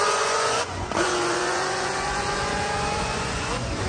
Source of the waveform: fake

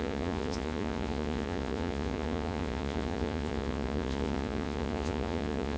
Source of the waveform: fake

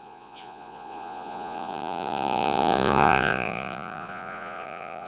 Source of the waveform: fake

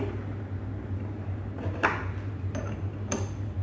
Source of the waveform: real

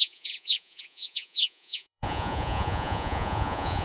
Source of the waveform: fake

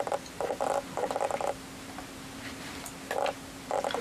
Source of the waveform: real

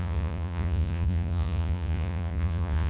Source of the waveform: fake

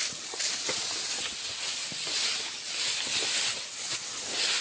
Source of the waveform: real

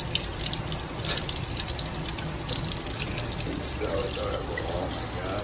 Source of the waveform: real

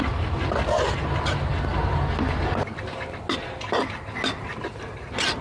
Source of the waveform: real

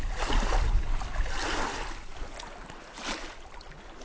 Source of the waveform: real